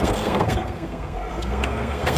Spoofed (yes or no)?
yes